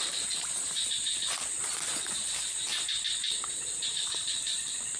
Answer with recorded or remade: remade